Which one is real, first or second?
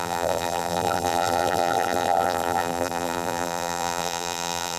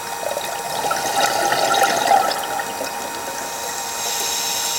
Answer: second